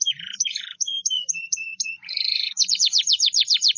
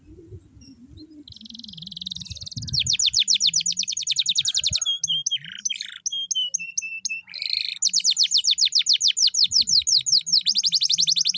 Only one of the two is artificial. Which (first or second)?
first